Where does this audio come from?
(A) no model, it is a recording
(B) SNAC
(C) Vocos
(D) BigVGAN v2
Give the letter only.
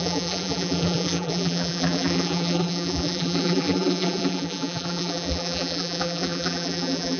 D